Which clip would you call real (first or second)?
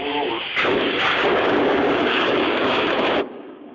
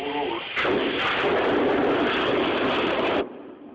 second